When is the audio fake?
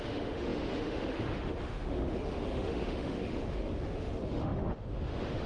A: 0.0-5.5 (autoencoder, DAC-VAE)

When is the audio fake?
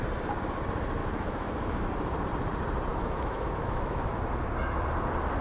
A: 1.0-1.9 (autoencoder, DAC-VAE); 2.9-4.1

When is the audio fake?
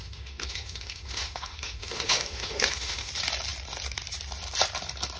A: 0.0-3.1 (autoencoder, DAC-VAE)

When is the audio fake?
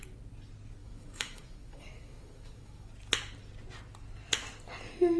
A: 0.8-2.9 (autoencoder, DAC-VAE)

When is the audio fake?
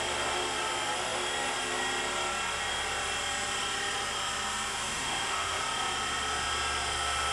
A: 4.9-5.6 (autoencoder, DAC-VAE)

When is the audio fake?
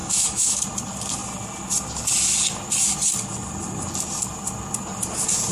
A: 0.0-0.6 (autoencoder, DAC-VAE)